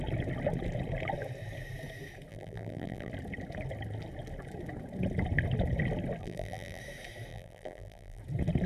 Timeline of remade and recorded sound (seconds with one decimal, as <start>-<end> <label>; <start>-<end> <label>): 0.0-2.3 recorded; 2.3-3.1 remade; 3.1-6.2 recorded; 6.2-6.8 remade; 6.8-7.3 recorded; 7.3-8.2 remade; 8.2-8.7 recorded